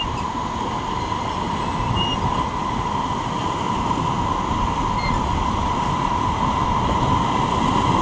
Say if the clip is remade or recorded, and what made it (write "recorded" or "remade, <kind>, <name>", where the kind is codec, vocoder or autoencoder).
recorded